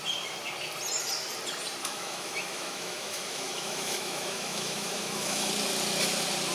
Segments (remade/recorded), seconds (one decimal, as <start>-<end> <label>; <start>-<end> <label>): 0.0-1.8 recorded; 1.8-5.5 remade; 5.5-6.5 recorded